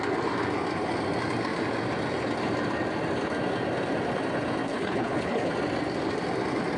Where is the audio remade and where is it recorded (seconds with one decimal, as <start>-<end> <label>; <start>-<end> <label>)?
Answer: 0.0-4.7 recorded; 4.7-5.5 remade; 5.5-6.8 recorded